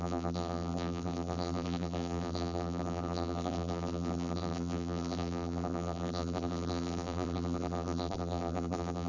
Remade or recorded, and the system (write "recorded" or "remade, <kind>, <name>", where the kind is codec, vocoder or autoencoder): remade, vocoder, BigVGAN v2